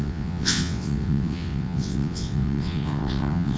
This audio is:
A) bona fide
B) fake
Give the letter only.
B